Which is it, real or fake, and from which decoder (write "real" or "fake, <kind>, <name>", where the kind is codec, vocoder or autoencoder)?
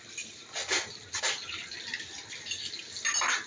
real